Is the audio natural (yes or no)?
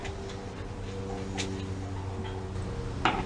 yes